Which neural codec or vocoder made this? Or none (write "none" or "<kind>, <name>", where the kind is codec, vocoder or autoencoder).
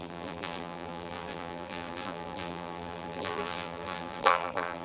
vocoder, BigVGAN v2